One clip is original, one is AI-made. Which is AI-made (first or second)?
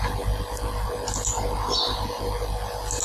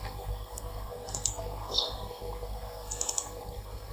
second